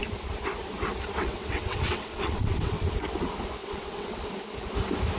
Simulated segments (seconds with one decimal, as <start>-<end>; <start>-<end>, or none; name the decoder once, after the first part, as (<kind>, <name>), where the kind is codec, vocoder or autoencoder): 1.2-2.9 (vocoder, WaveNeXt); 3.6-4.2